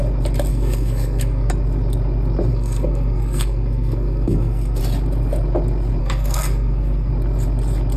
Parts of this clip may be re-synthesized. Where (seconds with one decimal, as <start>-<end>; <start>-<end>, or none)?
0.5-1.5; 2.5-4.8; 6.0-7.1